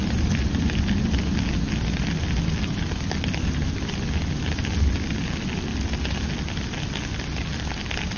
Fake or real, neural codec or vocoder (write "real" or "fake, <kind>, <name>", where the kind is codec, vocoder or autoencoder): real